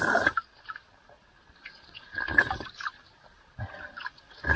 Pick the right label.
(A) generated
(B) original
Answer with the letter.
B